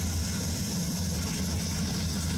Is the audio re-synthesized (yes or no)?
no